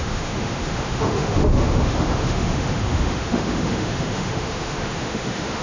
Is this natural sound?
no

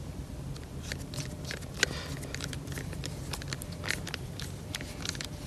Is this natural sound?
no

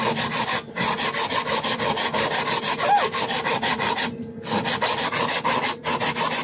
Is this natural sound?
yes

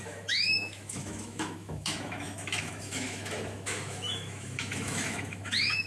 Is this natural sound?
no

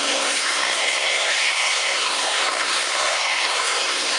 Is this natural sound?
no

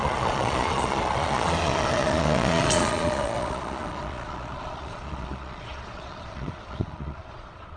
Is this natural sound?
no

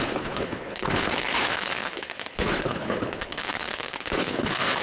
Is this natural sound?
no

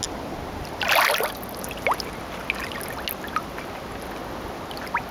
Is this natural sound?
yes